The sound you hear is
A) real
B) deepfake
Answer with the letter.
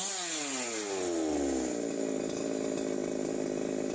A